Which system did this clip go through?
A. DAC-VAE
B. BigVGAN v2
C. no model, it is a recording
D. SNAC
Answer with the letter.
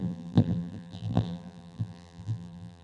B